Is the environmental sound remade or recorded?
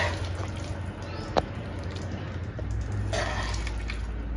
recorded